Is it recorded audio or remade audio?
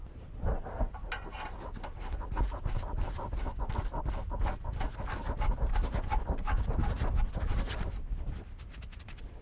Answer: recorded